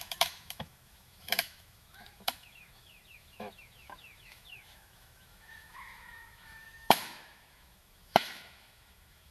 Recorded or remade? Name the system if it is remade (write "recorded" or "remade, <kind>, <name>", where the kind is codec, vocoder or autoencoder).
remade, autoencoder, DAC-VAE